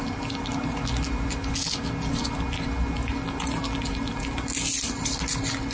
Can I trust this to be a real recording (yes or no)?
yes